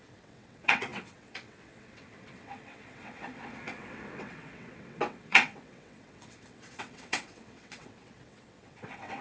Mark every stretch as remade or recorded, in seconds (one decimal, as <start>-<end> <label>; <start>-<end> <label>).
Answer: 0.0-9.2 remade